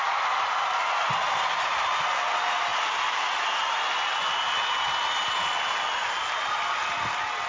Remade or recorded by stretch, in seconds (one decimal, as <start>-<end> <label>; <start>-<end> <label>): 0.0-7.5 recorded